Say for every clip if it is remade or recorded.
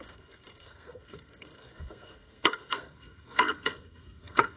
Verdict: remade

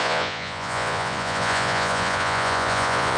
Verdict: remade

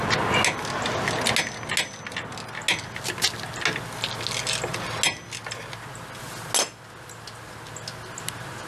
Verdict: recorded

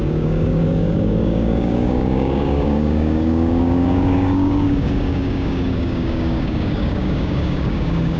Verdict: remade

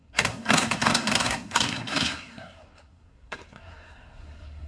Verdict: remade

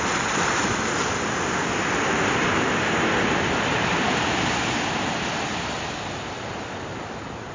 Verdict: recorded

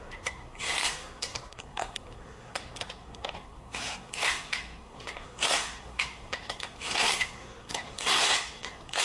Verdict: remade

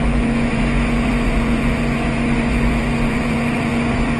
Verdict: remade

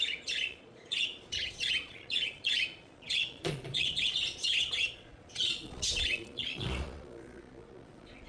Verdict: remade